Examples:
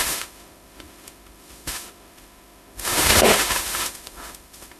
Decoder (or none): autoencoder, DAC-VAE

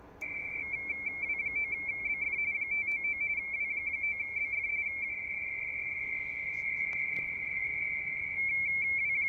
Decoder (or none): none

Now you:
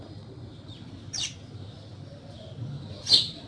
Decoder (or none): none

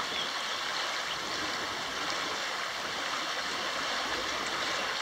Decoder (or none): none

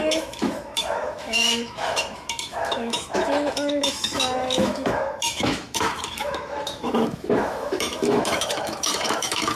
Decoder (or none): autoencoder, DAC-VAE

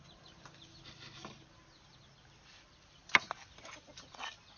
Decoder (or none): none